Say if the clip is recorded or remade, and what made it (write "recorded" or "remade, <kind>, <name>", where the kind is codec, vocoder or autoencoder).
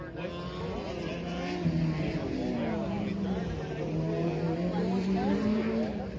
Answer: recorded